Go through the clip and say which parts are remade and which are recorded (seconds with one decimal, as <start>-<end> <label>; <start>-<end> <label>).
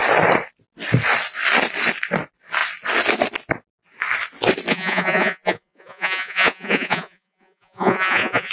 0.0-4.7 recorded; 4.7-8.5 remade